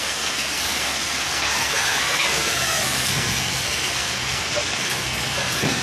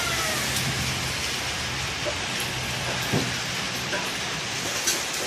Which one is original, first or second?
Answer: second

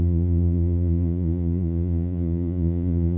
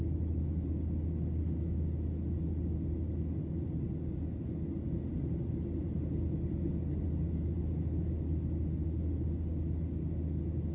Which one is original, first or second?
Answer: second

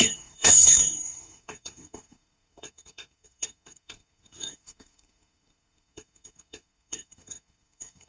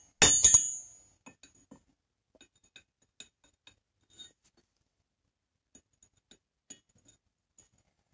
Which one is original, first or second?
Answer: second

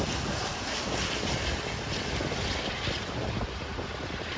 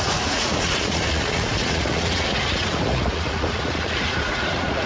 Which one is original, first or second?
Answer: first